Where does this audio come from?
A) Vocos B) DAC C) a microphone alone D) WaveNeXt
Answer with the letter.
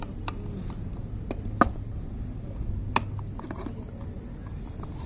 C